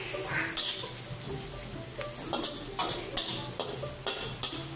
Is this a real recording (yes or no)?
yes